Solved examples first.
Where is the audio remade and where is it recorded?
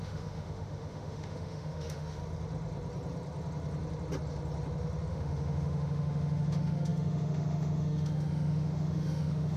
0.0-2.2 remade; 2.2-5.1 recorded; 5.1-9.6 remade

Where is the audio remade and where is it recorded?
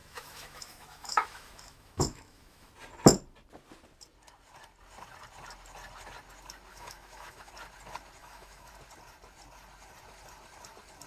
0.0-2.7 remade; 2.7-6.7 recorded; 6.7-7.5 remade; 7.5-8.2 recorded; 8.2-8.7 remade; 8.7-11.1 recorded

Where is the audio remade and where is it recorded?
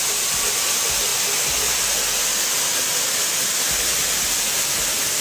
0.0-5.2 recorded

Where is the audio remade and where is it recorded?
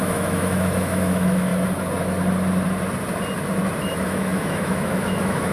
0.0-1.5 remade; 1.5-3.8 recorded; 3.8-5.5 remade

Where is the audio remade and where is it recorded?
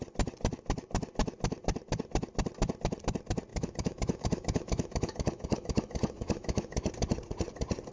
0.0-3.5 recorded; 3.5-6.9 remade; 6.9-7.9 recorded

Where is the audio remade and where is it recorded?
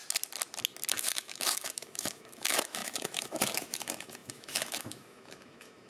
0.0-0.9 recorded; 0.9-5.9 remade